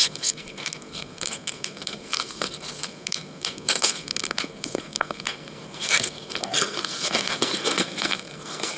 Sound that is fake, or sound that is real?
fake